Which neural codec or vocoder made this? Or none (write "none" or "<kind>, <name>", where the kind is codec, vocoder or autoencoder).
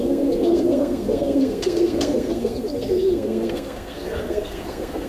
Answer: codec, SNAC